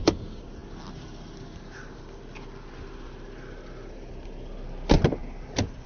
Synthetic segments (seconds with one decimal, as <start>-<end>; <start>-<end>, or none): none